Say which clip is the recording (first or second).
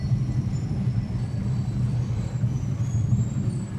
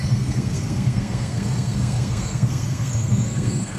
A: first